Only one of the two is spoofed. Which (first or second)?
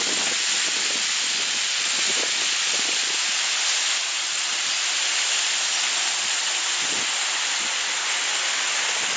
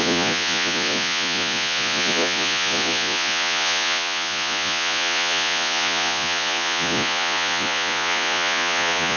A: second